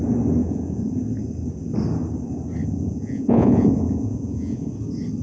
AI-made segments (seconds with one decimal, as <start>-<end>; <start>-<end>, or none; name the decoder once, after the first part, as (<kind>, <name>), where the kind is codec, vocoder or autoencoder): 0.4-1.0 (vocoder, Vocos); 2.6-4.7